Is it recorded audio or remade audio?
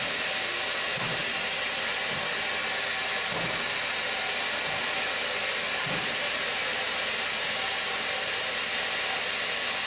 recorded